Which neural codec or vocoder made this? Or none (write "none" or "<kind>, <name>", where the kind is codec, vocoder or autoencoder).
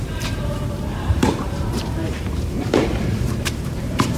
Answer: vocoder, BigVGAN v2